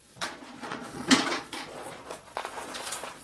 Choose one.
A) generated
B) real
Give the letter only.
A